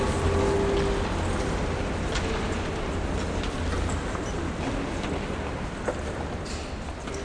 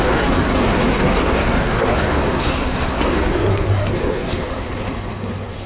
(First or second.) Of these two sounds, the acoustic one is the first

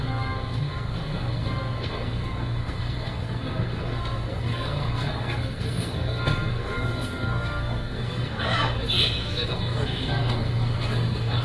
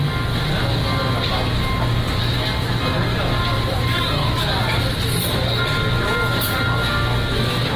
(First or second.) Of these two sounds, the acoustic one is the second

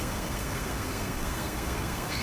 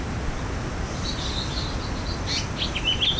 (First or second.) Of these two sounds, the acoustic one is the second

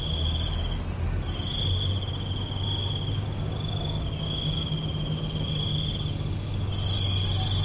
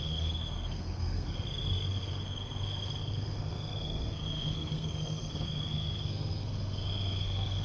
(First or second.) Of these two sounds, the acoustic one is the first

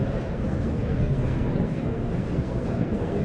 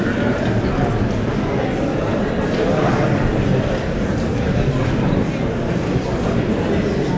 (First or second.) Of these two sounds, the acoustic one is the second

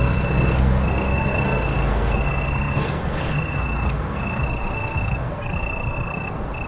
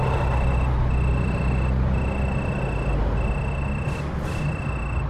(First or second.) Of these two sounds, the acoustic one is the second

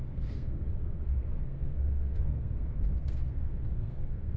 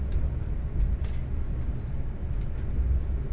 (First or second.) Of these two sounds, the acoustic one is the second